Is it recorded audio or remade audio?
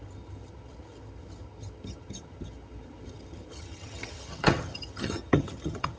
remade